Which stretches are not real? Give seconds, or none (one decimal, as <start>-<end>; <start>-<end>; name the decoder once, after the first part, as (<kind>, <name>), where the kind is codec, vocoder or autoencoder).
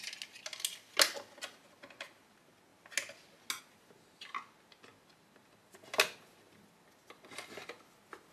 none